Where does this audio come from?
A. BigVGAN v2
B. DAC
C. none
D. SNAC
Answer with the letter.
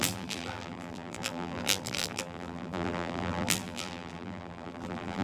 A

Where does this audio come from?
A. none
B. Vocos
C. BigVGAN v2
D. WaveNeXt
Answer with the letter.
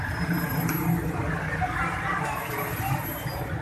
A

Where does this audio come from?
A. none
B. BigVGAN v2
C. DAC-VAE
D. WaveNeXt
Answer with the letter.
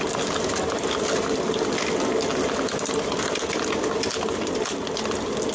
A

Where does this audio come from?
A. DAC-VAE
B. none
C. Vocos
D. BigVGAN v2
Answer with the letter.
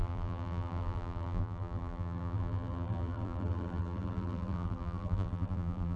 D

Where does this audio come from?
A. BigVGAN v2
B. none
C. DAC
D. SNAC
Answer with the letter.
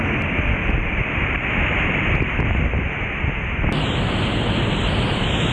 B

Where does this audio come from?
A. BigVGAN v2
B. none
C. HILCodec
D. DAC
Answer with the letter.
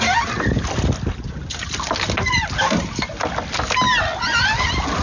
B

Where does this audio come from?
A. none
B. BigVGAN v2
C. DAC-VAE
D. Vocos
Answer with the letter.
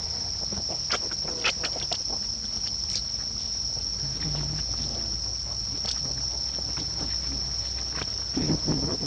A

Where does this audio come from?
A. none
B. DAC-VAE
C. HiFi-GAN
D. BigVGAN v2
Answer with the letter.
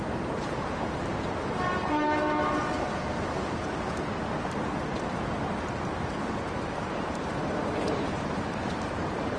D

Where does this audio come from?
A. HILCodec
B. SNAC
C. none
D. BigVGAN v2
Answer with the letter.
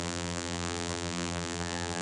D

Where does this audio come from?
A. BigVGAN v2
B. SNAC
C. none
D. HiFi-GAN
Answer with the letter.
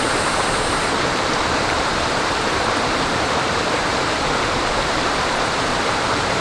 A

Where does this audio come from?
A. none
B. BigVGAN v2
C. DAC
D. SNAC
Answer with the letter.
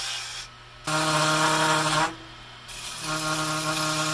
A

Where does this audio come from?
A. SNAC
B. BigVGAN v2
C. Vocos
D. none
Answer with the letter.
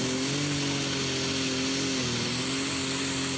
D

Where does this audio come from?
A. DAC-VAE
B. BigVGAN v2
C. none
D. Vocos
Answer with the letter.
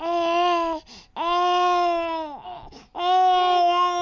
C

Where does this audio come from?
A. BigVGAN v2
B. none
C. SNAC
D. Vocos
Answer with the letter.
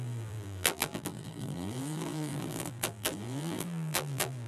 A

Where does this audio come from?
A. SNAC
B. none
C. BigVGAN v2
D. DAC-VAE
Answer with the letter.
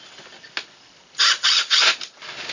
B